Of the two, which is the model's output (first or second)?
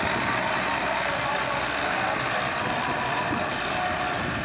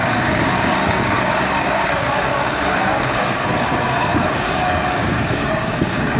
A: second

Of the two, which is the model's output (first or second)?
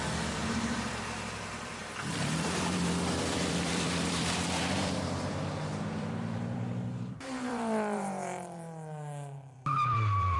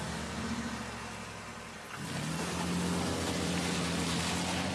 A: first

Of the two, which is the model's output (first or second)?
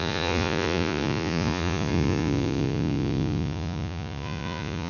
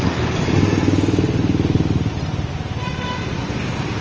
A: first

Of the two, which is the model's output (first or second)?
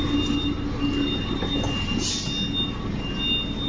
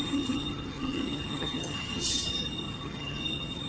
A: second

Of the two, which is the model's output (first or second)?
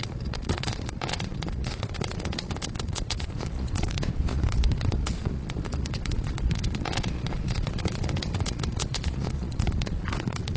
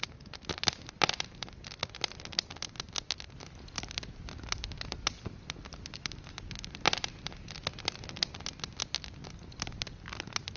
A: first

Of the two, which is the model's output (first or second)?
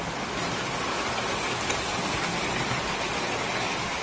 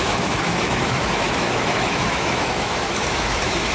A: second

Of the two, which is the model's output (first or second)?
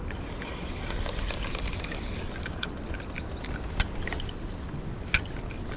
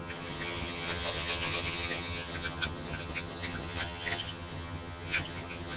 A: second